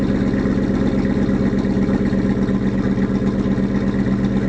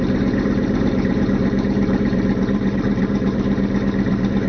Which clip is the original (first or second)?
first